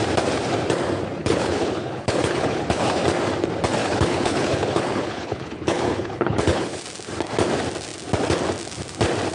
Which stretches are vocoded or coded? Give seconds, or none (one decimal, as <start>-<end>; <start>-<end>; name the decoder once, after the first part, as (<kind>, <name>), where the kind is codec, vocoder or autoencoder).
1.2-3.0 (codec, HILCodec); 3.8-6.8